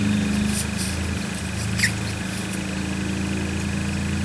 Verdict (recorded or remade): recorded